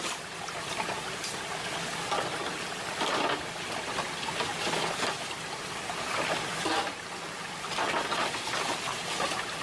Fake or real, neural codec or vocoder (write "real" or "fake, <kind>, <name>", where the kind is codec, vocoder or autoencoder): real